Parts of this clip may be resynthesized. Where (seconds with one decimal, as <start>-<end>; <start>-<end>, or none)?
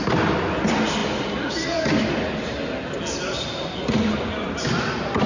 none